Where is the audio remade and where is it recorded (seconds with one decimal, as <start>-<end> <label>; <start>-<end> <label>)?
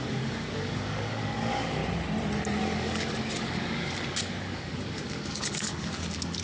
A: 0.0-1.8 remade; 1.8-2.6 recorded; 2.6-6.4 remade